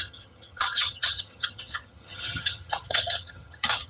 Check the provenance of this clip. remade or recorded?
remade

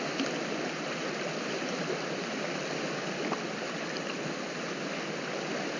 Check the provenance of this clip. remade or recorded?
recorded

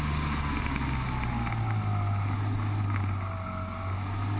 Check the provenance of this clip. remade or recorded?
recorded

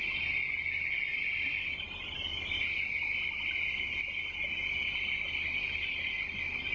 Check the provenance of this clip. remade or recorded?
recorded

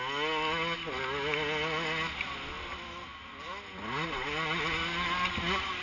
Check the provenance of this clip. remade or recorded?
recorded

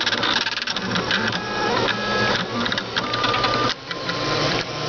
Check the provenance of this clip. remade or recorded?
recorded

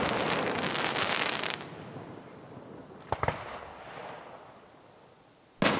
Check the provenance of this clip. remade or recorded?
recorded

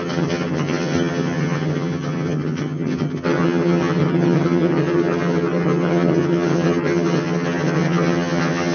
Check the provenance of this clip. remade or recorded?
remade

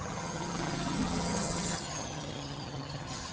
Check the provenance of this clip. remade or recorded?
remade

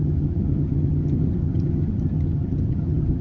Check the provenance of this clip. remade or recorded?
remade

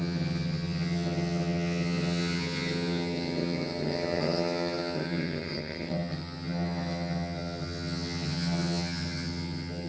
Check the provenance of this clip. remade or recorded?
remade